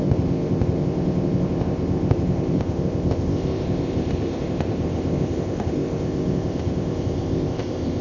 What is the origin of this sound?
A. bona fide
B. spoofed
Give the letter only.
B